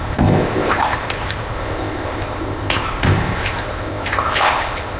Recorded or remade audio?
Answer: remade